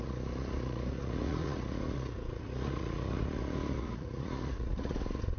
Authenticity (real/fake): fake